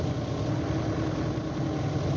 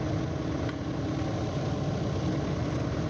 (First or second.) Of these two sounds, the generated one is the first